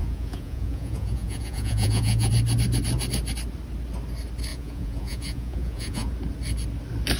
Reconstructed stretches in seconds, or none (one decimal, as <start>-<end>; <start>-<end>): 0.0-2.3; 4.5-6.1